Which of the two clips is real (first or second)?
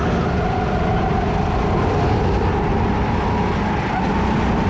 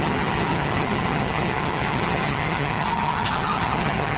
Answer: first